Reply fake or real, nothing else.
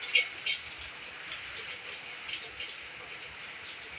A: real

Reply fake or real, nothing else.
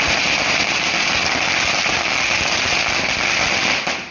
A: real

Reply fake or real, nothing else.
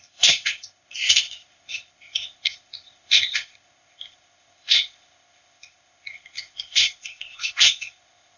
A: fake